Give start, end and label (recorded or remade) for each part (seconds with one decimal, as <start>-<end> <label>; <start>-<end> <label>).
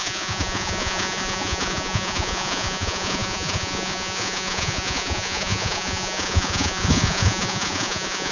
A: 0.0-8.3 remade